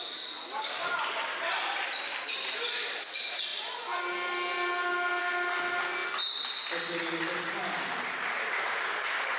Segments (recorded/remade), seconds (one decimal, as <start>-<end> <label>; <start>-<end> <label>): 0.0-9.4 recorded